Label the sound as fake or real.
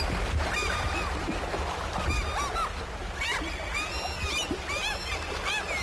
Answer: real